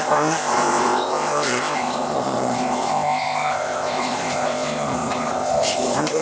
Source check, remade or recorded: remade